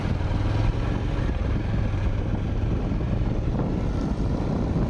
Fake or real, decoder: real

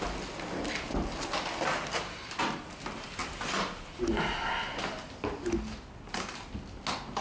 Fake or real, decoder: real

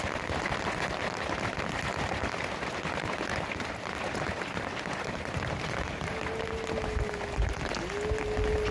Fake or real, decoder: real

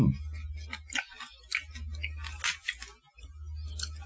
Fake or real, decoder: real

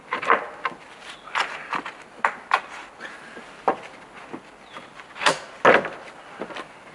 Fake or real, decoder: real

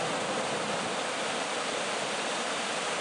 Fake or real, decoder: real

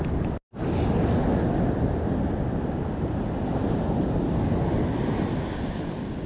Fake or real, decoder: real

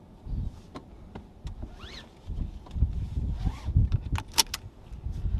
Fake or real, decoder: real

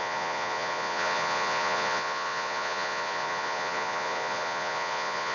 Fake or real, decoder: fake, vocoder, Vocos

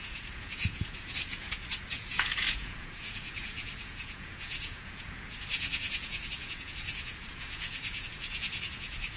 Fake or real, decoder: fake, vocoder, Vocos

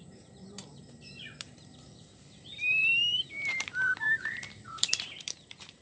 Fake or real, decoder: fake, vocoder, BigVGAN v2